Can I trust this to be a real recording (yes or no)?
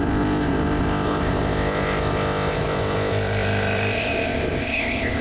no